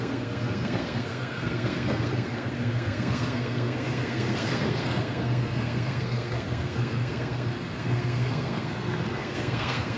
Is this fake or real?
fake